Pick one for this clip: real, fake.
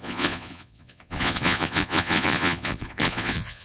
fake